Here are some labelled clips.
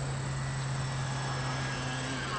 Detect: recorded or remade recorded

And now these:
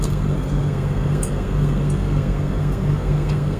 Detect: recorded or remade remade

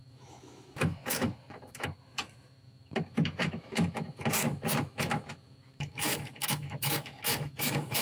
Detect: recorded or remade remade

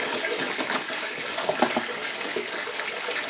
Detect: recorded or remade remade